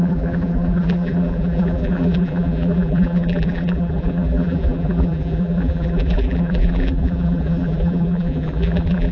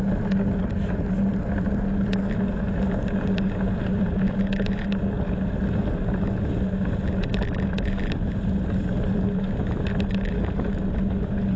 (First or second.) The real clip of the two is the second